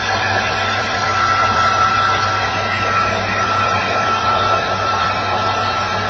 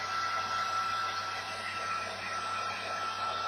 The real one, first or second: second